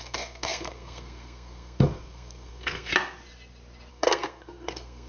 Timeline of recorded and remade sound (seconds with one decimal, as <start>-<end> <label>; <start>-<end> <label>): 0.0-2.9 remade; 2.9-3.9 recorded; 3.9-5.1 remade